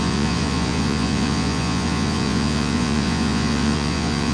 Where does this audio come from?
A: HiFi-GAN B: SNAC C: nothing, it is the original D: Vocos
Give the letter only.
D